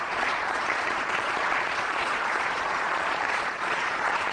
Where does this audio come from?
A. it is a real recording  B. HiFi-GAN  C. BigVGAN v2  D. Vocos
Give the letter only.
D